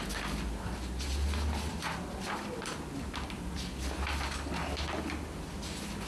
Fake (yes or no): no